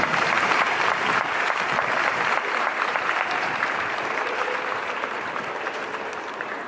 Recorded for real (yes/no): no